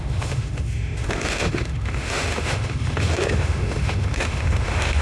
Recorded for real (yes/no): no